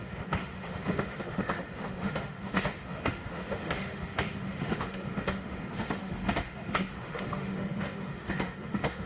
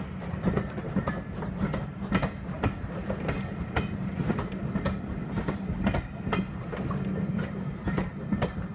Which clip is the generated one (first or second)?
first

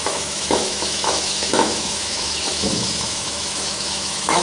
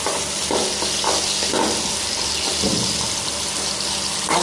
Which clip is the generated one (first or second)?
first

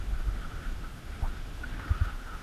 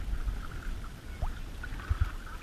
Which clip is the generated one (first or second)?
first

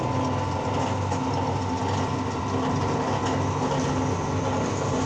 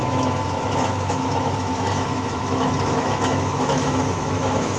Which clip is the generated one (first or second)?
second